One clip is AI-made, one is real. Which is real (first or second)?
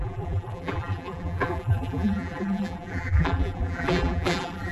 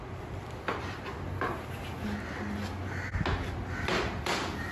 second